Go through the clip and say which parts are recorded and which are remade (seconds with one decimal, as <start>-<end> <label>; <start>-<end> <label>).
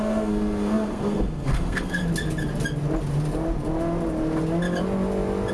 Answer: 0.0-2.0 remade; 2.0-5.5 recorded